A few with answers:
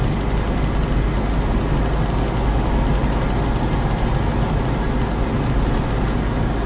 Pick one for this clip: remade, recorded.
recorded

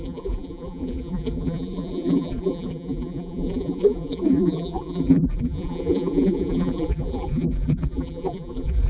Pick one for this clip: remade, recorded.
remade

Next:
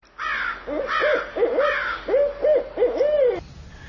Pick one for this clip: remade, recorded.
recorded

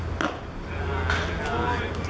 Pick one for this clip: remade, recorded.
recorded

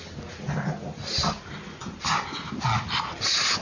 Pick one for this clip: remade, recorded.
recorded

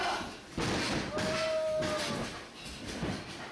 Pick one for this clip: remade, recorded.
recorded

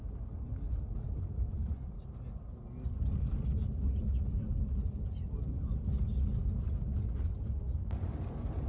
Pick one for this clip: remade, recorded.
recorded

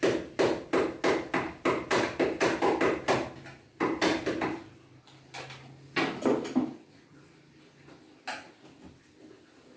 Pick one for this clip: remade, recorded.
recorded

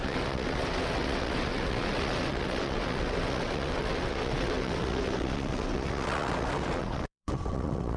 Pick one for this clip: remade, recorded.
remade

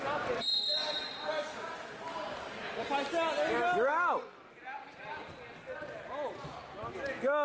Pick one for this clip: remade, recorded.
recorded